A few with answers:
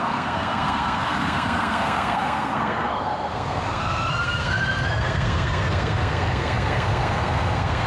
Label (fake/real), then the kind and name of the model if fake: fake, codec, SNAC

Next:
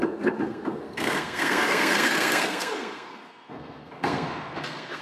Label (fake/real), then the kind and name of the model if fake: fake, codec, SNAC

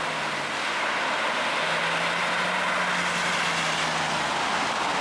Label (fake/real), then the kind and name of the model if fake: real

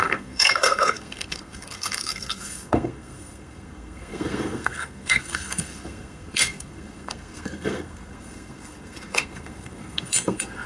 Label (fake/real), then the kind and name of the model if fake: fake, codec, SNAC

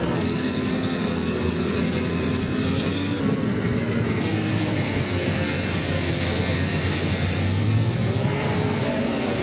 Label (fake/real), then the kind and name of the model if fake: fake, codec, SNAC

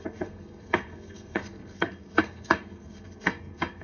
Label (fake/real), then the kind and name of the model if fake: fake, codec, SNAC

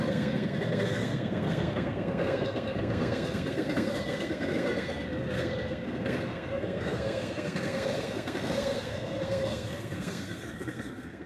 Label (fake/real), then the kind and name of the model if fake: fake, codec, SNAC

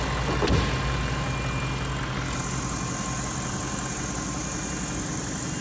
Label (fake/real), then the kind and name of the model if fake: real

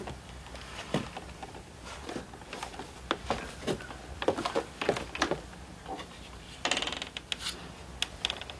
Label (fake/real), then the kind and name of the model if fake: real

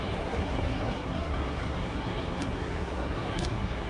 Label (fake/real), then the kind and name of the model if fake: fake, codec, SNAC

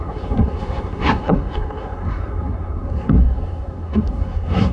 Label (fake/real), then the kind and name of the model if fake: fake, codec, SNAC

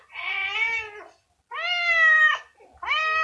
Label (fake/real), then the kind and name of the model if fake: real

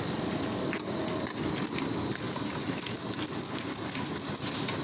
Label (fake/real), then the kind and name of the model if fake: real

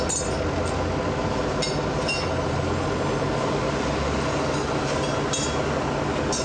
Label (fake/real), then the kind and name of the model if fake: real